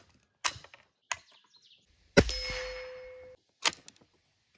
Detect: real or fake real